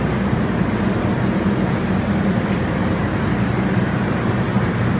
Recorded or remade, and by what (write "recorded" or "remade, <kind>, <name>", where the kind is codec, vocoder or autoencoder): remade, vocoder, BigVGAN v2